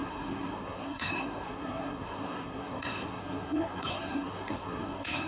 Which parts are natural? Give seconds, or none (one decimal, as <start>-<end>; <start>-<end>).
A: none